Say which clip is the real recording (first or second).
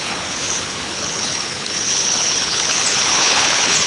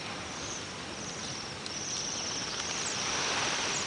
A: second